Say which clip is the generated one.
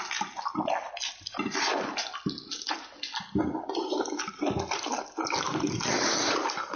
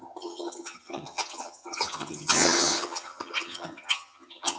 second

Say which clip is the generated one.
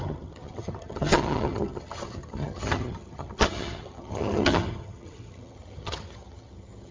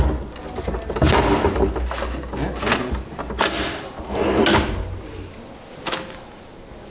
first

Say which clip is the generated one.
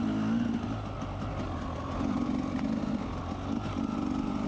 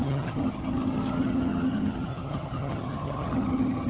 second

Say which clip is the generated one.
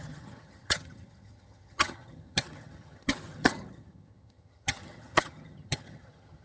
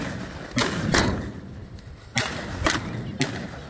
first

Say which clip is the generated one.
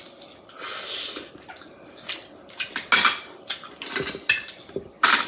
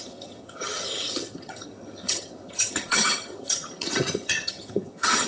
second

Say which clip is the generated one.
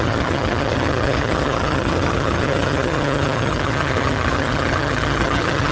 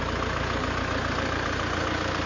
first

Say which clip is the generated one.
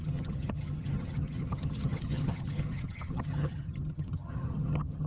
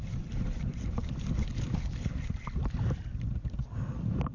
first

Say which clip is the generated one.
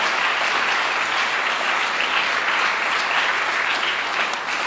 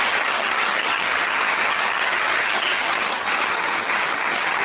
second